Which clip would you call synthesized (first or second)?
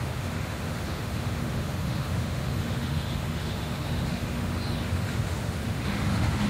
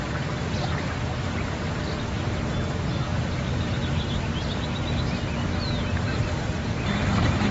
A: first